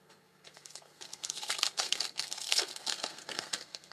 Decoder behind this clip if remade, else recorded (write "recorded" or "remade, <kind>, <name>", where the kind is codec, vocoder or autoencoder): remade, codec, SNAC